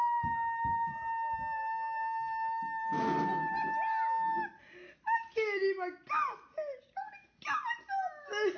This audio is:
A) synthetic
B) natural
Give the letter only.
B